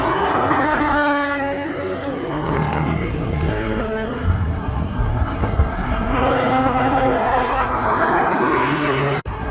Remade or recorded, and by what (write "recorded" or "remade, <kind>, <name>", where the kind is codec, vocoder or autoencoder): remade, codec, SNAC